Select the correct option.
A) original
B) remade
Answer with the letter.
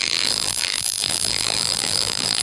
B